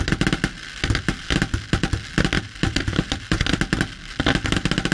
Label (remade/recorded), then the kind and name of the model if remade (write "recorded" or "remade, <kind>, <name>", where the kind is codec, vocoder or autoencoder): recorded